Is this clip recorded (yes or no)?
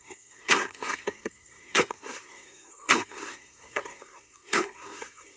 no